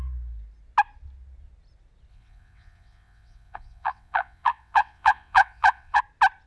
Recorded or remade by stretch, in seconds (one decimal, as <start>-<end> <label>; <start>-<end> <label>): 0.0-2.1 recorded; 2.1-6.0 remade; 6.0-6.5 recorded